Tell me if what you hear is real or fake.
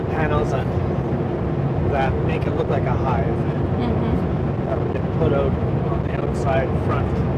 real